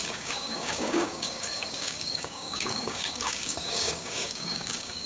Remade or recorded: remade